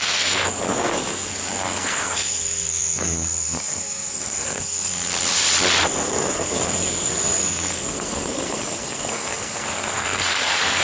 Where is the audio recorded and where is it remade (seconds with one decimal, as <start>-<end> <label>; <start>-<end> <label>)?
0.0-4.9 remade; 4.9-6.0 recorded; 6.0-10.8 remade